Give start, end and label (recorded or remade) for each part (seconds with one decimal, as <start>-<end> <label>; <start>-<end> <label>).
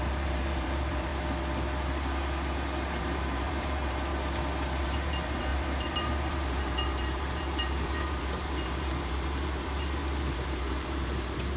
0.0-1.1 remade; 1.1-3.0 recorded; 3.0-4.1 remade; 4.1-4.8 recorded; 4.8-11.6 remade